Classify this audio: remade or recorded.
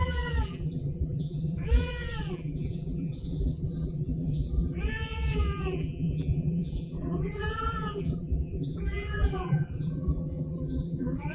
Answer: remade